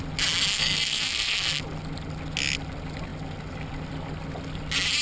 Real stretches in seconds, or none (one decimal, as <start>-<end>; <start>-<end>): 0.0-0.5; 1.6-5.0